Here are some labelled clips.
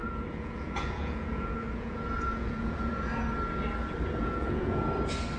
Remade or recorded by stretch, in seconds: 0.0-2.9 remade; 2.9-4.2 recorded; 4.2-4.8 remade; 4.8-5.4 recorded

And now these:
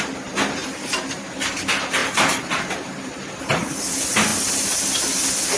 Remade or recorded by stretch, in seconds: 0.0-0.6 recorded; 0.6-1.2 remade; 1.2-2.0 recorded; 2.0-3.4 remade; 3.4-4.3 recorded; 4.3-4.8 remade; 4.8-5.6 recorded

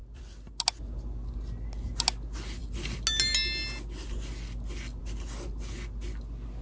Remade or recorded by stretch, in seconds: 0.0-6.6 recorded

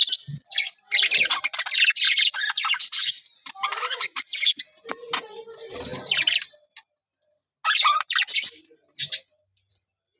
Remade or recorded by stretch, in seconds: 0.0-2.6 recorded; 2.6-4.6 remade; 4.6-10.2 recorded

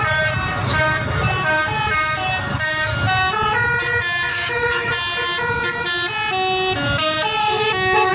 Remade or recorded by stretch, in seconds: 0.0-4.3 recorded; 4.3-4.9 remade; 4.9-7.4 recorded; 7.4-8.1 remade

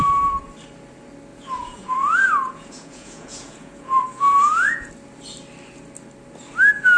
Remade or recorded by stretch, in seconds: 0.0-1.3 recorded; 1.3-4.9 remade; 4.9-7.0 recorded